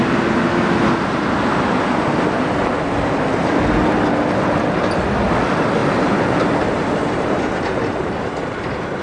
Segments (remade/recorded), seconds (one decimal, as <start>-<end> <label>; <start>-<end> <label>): 0.0-5.8 recorded; 5.8-7.4 remade; 7.4-9.0 recorded